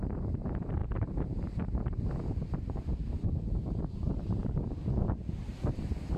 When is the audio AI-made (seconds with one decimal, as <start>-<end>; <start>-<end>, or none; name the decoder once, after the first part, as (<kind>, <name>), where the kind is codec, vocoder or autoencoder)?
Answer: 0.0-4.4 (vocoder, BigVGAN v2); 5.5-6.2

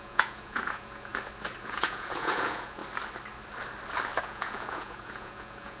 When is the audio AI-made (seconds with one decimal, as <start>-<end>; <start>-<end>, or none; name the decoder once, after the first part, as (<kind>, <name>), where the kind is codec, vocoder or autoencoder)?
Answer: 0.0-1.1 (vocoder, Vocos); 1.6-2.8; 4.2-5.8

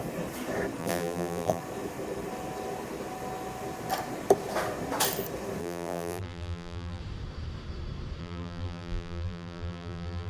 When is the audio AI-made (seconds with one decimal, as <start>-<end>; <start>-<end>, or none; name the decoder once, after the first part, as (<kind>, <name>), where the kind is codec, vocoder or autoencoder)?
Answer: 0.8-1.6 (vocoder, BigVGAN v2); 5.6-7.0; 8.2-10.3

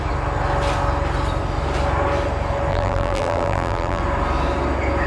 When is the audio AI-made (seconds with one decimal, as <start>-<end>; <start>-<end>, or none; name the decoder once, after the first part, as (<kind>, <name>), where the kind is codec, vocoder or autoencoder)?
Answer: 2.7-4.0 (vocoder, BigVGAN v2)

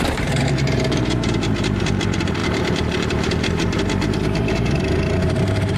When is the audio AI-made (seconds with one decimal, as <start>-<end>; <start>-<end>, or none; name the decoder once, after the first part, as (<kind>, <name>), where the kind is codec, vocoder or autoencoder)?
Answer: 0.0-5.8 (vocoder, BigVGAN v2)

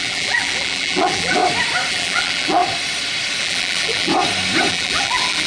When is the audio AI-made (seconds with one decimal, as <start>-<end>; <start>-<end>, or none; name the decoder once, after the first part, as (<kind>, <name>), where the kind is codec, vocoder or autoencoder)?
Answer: 0.0-1.4 (vocoder, BigVGAN v2); 1.9-2.6; 3.4-4.1; 4.7-5.5